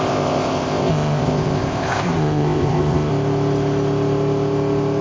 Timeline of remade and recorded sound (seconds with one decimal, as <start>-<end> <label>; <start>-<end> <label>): 0.0-3.1 remade; 3.1-5.0 recorded